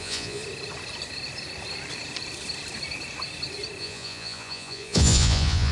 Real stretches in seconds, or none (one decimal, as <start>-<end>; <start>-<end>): 0.4-3.8